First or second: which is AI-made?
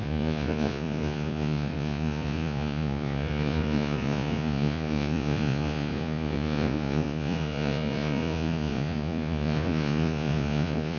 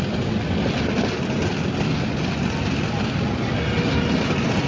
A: first